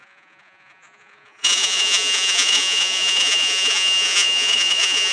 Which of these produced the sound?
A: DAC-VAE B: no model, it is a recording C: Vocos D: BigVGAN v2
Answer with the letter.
C